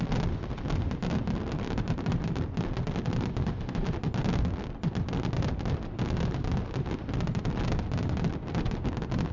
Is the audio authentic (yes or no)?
yes